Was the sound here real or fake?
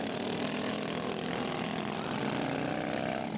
real